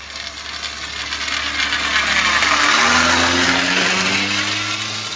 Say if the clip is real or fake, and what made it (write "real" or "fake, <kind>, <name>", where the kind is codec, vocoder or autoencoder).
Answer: real